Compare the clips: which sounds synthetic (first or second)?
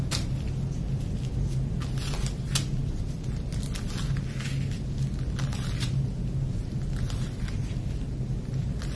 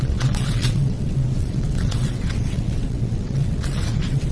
second